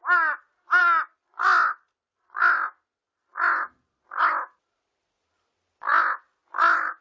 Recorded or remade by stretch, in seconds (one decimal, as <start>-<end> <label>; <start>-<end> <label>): 0.0-7.0 recorded